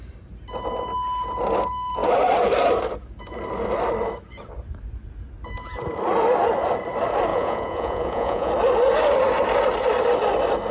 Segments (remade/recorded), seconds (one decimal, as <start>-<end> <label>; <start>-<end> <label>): 0.0-7.3 recorded; 7.3-8.5 remade; 8.5-10.7 recorded